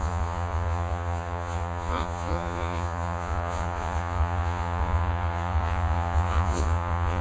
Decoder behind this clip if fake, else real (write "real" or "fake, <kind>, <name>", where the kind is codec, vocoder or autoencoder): fake, vocoder, Vocos